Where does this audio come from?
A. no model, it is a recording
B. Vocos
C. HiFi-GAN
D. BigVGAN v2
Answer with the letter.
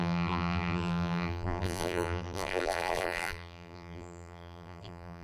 D